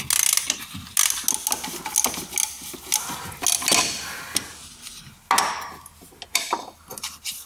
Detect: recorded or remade recorded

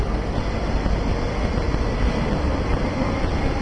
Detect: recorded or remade recorded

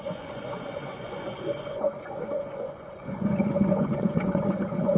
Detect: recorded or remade remade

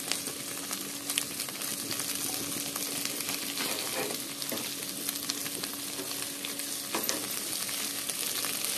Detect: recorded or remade recorded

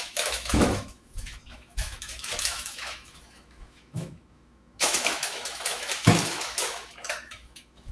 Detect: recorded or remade remade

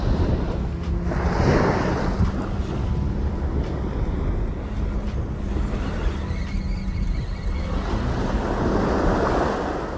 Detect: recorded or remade recorded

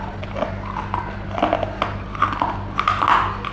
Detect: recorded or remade recorded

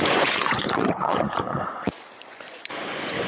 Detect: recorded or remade remade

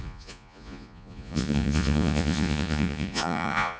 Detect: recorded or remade remade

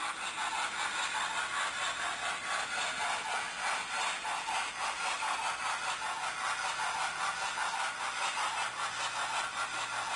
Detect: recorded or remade recorded